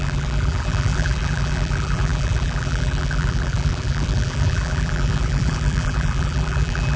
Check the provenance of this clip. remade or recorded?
remade